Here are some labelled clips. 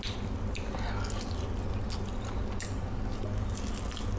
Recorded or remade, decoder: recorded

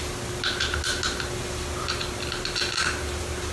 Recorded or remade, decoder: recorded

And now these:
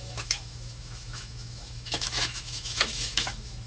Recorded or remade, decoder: remade, autoencoder, DAC-VAE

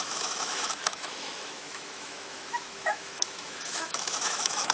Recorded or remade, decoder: remade, autoencoder, DAC-VAE